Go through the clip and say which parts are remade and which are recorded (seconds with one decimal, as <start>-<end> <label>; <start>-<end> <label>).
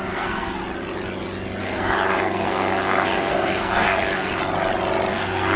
0.0-0.6 remade; 0.6-1.6 recorded; 1.6-4.4 remade; 4.4-5.1 recorded; 5.1-5.6 remade